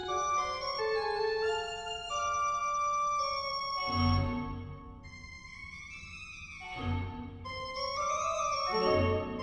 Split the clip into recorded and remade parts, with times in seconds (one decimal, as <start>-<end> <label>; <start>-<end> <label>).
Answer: 0.0-9.4 recorded

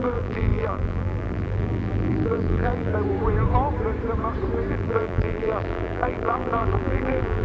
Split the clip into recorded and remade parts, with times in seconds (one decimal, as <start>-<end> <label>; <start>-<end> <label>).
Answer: 0.0-2.9 remade; 2.9-4.7 recorded; 4.7-7.4 remade

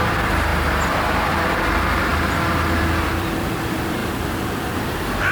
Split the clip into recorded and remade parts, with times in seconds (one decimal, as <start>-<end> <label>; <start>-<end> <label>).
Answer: 0.0-0.5 remade; 0.5-1.6 recorded; 1.6-4.0 remade; 4.0-4.6 recorded; 4.6-5.3 remade

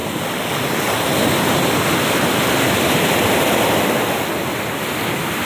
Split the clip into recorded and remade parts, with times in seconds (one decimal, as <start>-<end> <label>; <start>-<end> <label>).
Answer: 0.0-5.4 recorded

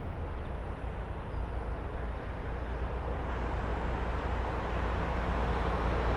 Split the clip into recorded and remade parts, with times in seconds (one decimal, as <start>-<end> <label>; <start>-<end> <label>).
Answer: 0.0-6.2 recorded

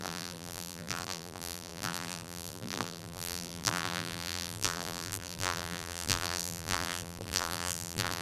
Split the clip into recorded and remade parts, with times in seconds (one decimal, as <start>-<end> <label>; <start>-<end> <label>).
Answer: 0.0-8.2 remade

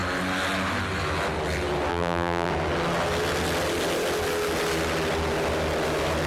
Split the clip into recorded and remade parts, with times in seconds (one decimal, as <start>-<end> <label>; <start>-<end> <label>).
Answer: 0.0-1.9 recorded; 1.9-2.5 remade; 2.5-6.3 recorded